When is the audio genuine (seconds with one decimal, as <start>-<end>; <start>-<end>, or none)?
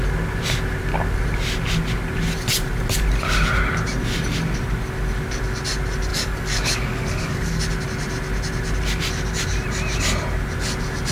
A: 0.0-6.1; 7.6-11.1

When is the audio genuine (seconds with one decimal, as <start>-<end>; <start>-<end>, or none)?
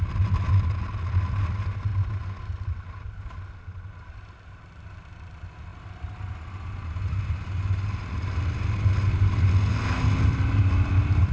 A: 0.0-11.3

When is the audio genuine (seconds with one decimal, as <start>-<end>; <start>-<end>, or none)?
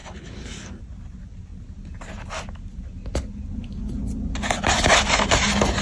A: 0.8-5.8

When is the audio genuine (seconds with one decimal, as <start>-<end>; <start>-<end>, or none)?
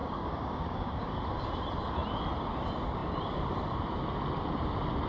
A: 1.2-5.1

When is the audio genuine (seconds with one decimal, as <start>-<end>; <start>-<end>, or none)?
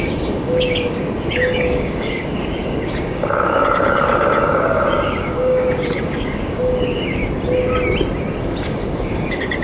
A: 7.2-8.4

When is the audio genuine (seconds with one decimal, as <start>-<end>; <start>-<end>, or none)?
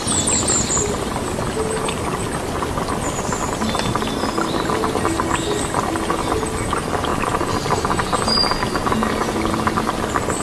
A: 0.0-10.4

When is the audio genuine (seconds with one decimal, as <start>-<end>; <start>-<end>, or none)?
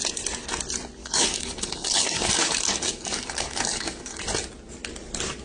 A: 0.0-1.0; 4.2-5.4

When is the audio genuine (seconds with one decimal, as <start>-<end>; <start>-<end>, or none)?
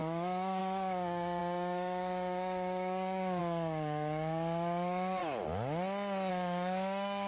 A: 5.2-6.3